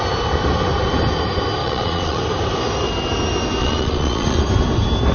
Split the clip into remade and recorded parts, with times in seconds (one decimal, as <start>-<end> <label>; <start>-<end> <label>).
0.0-1.6 recorded; 1.6-2.2 remade; 2.2-3.6 recorded; 3.6-4.4 remade; 4.4-5.1 recorded